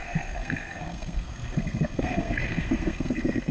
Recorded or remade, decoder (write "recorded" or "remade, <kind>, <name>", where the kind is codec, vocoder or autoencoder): remade, codec, SNAC